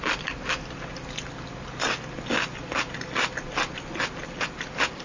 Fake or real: real